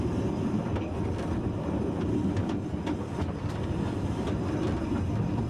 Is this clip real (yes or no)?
yes